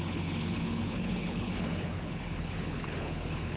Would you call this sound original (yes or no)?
no